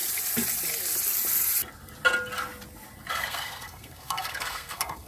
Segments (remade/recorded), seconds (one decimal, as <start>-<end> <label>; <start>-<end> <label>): 0.0-3.1 recorded; 3.1-5.1 remade